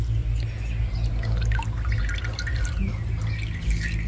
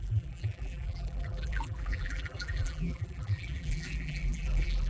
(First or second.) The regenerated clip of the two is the second